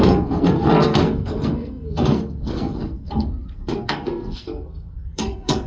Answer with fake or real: fake